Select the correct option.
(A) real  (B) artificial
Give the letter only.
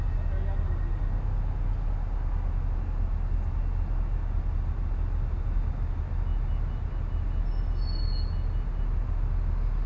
A